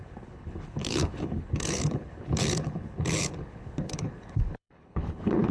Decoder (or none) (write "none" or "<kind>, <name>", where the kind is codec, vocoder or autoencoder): codec, HILCodec